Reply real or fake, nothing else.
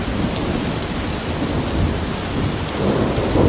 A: real